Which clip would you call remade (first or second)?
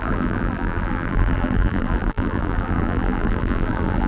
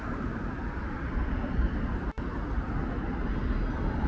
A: first